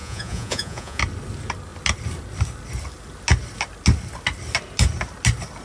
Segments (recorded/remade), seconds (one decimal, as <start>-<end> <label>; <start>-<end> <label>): 0.0-1.0 remade; 1.0-5.6 recorded